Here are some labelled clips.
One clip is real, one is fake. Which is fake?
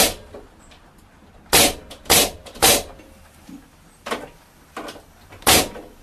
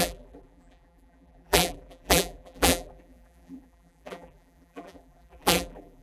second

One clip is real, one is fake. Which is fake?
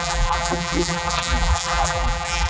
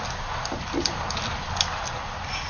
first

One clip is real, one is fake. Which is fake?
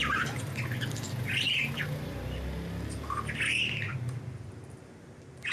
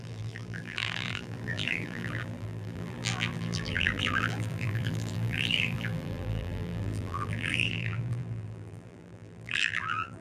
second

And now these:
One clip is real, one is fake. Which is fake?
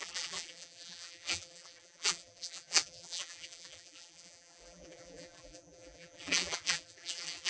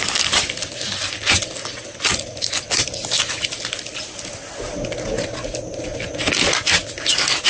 first